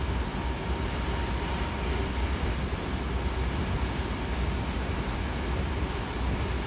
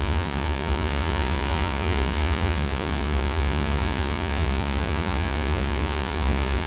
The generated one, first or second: second